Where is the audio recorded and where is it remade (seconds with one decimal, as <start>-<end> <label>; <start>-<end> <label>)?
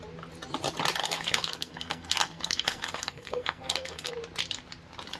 0.0-1.0 recorded; 1.0-4.1 remade; 4.1-5.2 recorded